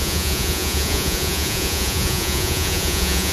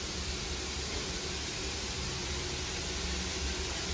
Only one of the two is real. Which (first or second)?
second